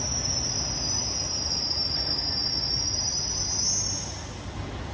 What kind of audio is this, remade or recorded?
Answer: recorded